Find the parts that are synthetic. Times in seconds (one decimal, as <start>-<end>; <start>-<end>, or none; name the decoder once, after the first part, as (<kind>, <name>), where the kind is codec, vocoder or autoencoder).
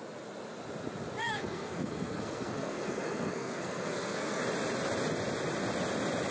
1.2-4.4 (codec, SNAC)